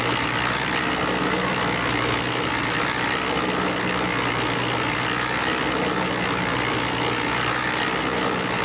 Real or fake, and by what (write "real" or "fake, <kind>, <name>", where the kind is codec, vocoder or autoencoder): real